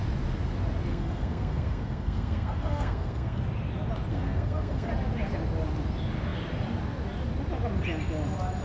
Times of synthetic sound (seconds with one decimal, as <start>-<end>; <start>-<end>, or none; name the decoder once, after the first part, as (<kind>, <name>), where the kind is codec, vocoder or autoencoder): 0.9-3.4 (codec, SNAC); 4.1-4.9